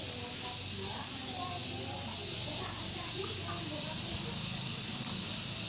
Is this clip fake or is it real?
real